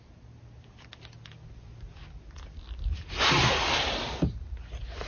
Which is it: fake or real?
real